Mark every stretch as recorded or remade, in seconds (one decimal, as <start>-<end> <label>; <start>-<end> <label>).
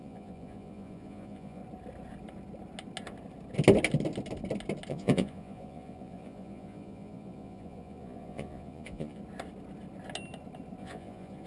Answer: 0.0-1.6 remade; 1.6-4.9 recorded; 4.9-9.2 remade; 9.2-10.8 recorded; 10.8-11.5 remade